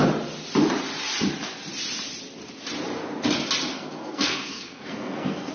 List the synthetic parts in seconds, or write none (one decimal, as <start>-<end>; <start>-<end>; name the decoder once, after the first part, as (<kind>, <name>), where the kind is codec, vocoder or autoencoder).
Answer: 3.7-5.5 (codec, SNAC)